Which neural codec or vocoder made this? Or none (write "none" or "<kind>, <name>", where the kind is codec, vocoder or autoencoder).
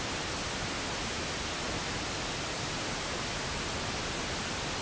none